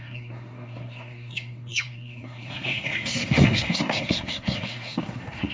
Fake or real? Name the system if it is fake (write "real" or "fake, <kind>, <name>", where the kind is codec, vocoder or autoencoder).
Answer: fake, codec, SNAC